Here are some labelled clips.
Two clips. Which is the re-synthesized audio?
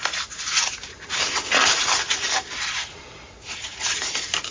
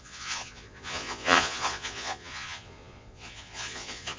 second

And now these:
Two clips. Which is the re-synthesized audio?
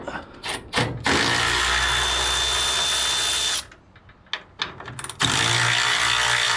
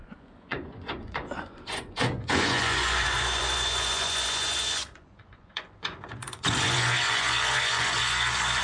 second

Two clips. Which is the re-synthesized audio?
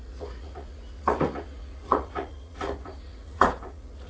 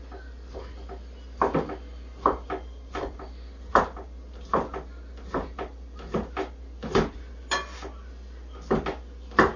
first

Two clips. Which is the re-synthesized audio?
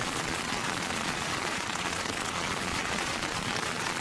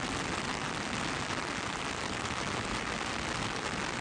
first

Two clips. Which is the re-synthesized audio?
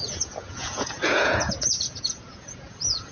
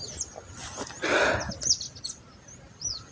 first